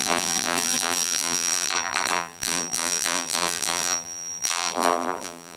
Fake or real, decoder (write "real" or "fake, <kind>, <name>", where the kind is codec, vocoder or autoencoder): fake, vocoder, BigVGAN v2